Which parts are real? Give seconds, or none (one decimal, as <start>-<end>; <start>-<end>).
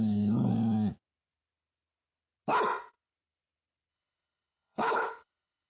0.5-3.9